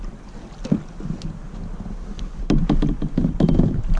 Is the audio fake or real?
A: real